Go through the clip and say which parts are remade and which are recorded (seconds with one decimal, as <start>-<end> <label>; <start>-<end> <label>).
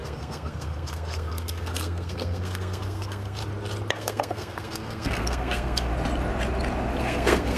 0.0-3.4 remade; 3.4-3.9 recorded; 3.9-5.9 remade; 5.9-7.0 recorded; 7.0-7.6 remade